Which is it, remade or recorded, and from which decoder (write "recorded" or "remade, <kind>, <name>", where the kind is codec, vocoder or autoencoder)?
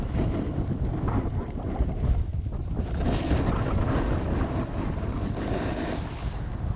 recorded